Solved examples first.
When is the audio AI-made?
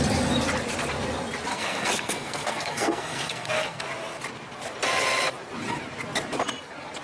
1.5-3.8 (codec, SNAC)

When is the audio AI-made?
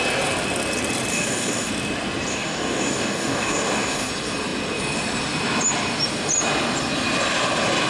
1.1-1.7 (codec, DAC); 2.3-4.1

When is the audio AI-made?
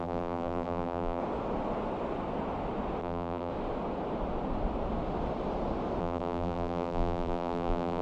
0.0-1.2 (vocoder, BigVGAN v2); 3.0-3.5; 6.0-8.0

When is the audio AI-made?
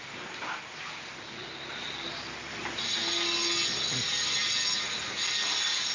none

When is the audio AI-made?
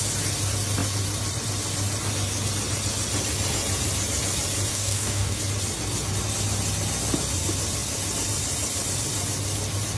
4.7-5.4 (codec, DAC)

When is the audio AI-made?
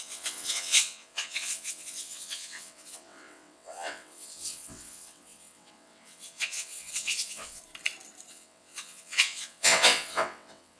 0.0-7.6 (vocoder, WaveNeXt); 8.3-10.8